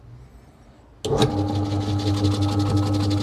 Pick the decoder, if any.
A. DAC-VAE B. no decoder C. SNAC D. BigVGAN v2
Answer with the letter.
B